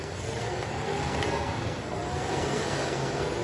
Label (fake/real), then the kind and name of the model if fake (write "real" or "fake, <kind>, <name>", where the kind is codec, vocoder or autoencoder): fake, codec, SNAC